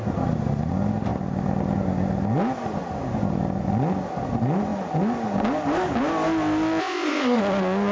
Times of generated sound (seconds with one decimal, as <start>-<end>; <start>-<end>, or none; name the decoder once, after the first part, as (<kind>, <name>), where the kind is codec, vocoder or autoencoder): 6.8-7.4 (codec, ZipCodec)